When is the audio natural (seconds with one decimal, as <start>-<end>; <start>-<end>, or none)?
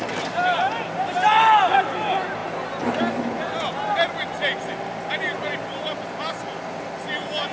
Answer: 0.0-7.5